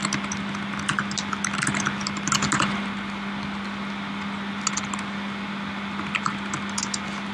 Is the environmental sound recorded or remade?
recorded